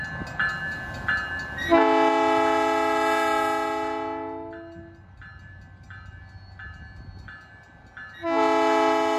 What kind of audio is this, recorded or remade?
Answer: recorded